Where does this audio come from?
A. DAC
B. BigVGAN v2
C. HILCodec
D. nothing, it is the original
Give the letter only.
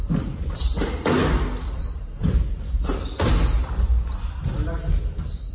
D